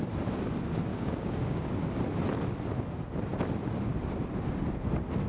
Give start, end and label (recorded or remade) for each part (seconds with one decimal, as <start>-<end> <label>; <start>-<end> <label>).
0.0-0.9 recorded; 0.9-1.6 remade; 1.6-5.3 recorded